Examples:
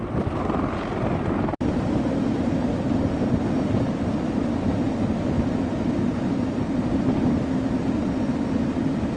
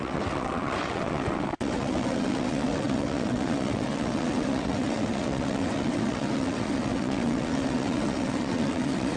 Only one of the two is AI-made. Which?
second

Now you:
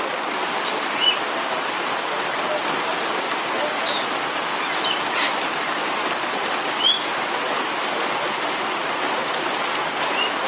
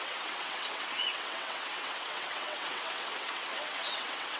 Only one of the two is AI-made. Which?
second